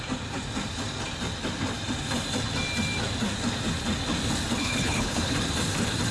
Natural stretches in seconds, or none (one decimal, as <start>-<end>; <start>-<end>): 0.0-4.6; 5.3-6.1